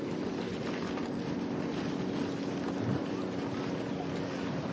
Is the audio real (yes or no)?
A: yes